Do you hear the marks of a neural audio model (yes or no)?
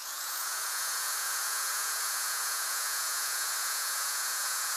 yes